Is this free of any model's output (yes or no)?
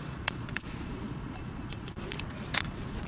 no